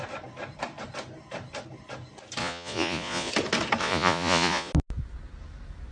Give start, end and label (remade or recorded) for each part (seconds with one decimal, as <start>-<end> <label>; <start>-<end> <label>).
0.0-2.4 recorded; 2.4-3.3 remade; 3.3-3.8 recorded; 3.8-4.7 remade; 4.7-5.9 recorded